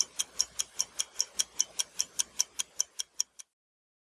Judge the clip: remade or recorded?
recorded